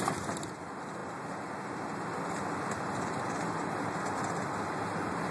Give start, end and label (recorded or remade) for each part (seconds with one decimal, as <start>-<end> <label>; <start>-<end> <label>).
0.0-5.3 recorded